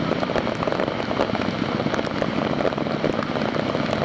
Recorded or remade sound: recorded